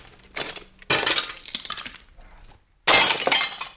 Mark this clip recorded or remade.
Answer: recorded